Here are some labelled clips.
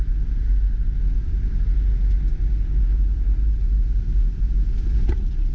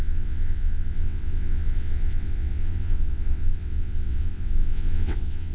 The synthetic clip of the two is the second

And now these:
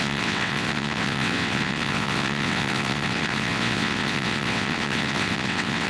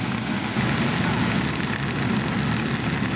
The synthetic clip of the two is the first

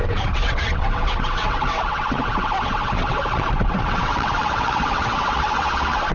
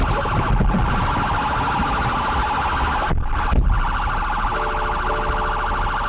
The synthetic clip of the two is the first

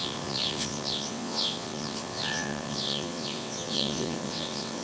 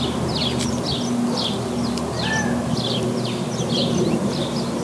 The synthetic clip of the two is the first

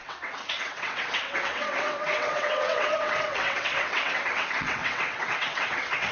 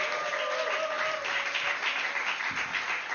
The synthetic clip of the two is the first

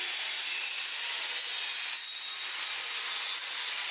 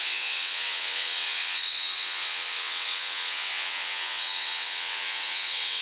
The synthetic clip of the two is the second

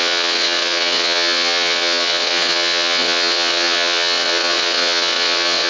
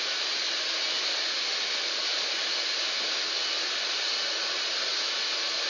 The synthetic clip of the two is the first